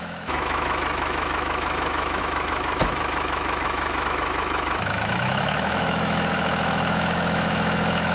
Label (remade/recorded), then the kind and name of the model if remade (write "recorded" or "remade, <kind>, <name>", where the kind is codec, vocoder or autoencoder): remade, autoencoder, DAC-VAE